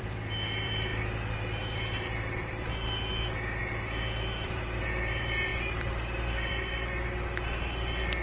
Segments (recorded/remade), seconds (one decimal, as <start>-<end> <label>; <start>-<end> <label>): 0.0-0.9 remade; 0.9-1.6 recorded; 1.6-3.1 remade; 3.1-3.6 recorded; 3.6-8.2 remade